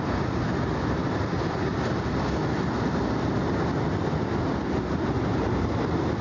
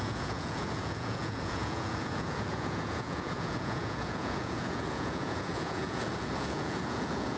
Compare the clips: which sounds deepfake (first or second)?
second